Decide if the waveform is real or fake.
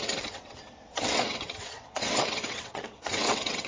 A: fake